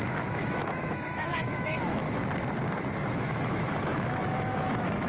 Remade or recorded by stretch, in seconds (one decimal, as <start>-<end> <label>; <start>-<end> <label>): 0.0-2.0 remade; 2.0-3.1 recorded; 3.1-5.1 remade